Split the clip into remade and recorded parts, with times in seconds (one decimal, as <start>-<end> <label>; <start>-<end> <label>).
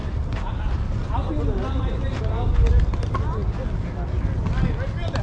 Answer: 0.0-5.2 recorded